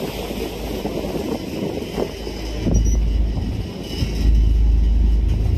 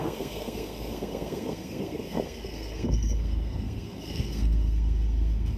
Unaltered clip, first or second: first